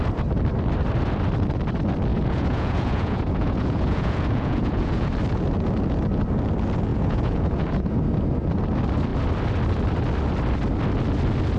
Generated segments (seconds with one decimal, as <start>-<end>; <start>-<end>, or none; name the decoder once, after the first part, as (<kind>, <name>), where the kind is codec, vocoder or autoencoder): 2.1-5.1 (vocoder, Vocos); 6.9-8.0